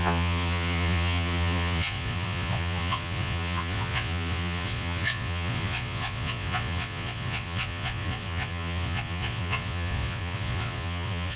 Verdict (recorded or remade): remade